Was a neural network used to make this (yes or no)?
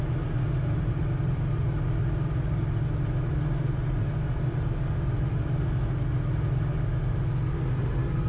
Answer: no